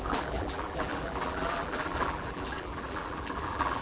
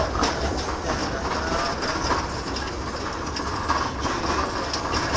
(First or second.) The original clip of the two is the second